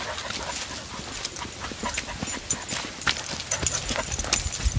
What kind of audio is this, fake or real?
real